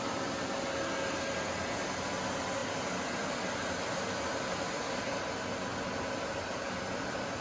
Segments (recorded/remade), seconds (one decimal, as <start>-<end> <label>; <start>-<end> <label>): 0.0-2.6 recorded; 2.6-5.3 remade; 5.3-6.5 recorded; 6.5-7.4 remade